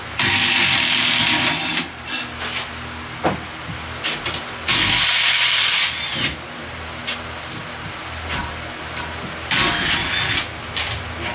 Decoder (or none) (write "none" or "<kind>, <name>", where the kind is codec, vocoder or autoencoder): none